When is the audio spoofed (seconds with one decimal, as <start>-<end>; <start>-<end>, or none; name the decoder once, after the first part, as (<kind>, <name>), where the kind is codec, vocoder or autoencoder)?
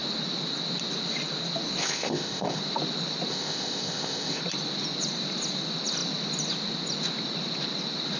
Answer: 1.8-2.6 (codec, ZipCodec); 3.3-4.4